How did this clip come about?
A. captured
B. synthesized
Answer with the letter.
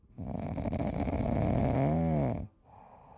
A